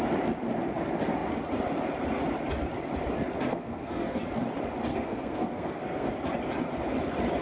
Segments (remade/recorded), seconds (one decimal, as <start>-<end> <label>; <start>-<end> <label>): 0.0-3.5 recorded; 3.5-4.2 remade; 4.2-4.9 recorded; 4.9-6.1 remade; 6.1-7.4 recorded

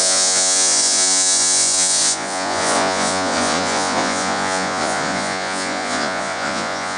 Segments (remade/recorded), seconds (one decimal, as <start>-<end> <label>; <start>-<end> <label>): 0.0-7.0 remade

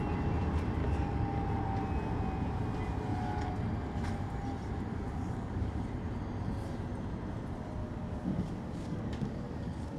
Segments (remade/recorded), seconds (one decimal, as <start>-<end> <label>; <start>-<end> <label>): 0.0-0.8 recorded; 0.8-1.4 remade; 1.4-4.9 recorded; 4.9-5.8 remade; 5.8-7.8 recorded; 7.8-10.0 remade